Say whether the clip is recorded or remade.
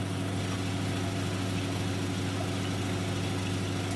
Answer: recorded